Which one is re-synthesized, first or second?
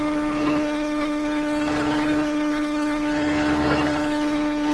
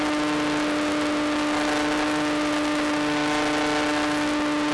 first